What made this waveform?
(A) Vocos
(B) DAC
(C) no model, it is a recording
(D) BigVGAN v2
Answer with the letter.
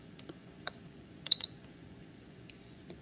A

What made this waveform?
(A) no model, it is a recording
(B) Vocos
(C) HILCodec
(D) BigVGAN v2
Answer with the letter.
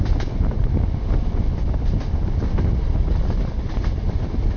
A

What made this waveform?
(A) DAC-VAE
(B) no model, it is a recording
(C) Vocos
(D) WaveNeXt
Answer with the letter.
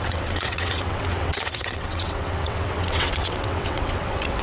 D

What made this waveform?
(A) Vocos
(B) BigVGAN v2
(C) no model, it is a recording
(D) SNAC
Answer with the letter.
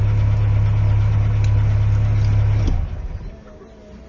C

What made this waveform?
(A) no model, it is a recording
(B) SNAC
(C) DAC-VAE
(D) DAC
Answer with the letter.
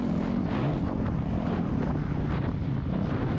A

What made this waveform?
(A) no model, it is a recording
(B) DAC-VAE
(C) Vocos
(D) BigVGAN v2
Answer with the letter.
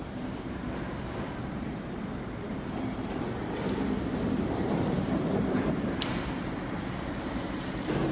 D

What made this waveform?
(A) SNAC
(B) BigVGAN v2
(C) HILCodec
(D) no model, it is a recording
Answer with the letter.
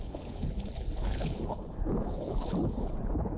C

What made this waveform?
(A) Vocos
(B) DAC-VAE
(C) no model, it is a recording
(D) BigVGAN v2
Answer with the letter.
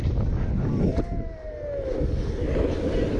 C